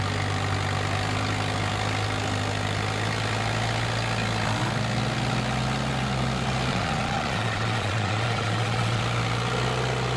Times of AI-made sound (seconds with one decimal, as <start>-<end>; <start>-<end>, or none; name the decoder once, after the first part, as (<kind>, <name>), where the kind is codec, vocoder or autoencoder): 6.7-9.0 (vocoder, Vocos)